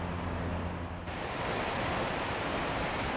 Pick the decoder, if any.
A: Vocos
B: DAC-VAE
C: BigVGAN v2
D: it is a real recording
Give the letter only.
D